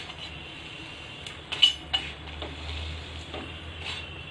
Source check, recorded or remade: recorded